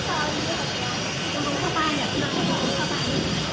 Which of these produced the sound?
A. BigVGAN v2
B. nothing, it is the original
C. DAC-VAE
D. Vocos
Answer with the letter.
B